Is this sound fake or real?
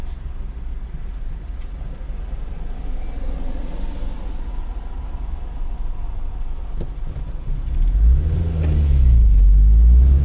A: real